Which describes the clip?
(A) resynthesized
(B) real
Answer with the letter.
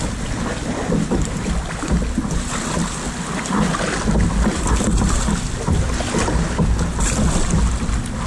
B